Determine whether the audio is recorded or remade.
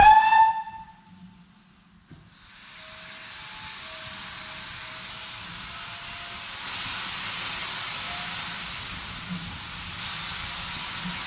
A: recorded